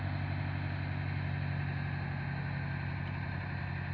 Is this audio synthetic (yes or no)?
no